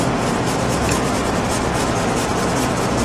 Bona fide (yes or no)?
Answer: yes